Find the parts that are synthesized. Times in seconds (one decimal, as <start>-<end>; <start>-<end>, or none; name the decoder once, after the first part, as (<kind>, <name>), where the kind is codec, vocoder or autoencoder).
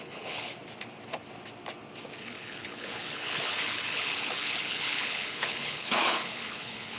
0.0-0.6 (codec, HILCodec); 2.2-7.0